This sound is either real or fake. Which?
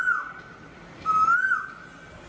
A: real